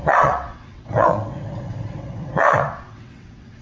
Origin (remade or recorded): remade